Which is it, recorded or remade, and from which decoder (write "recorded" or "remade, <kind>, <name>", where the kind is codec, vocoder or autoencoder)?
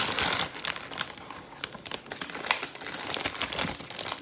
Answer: recorded